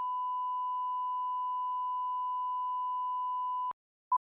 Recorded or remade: recorded